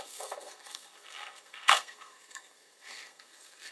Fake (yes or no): yes